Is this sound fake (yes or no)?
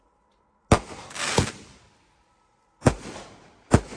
no